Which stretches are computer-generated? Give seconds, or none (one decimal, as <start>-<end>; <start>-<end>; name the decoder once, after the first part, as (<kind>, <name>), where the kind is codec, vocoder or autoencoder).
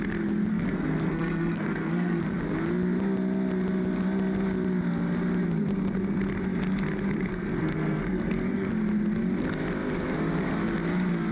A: 0.5-2.2 (codec, SNAC); 7.3-8.7